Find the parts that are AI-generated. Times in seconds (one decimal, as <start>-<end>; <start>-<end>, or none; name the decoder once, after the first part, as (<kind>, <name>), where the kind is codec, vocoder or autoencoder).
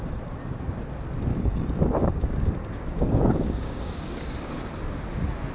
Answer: 1.3-4.6 (codec, DAC)